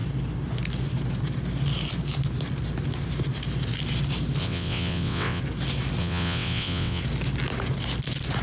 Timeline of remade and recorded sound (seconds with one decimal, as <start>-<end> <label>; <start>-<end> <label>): 0.0-4.4 recorded; 4.4-5.4 remade; 5.4-6.0 recorded; 6.0-7.0 remade; 7.0-8.4 recorded